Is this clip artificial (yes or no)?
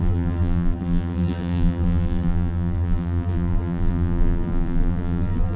yes